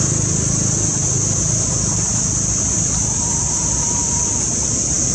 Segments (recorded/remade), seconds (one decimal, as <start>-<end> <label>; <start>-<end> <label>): 0.0-5.1 recorded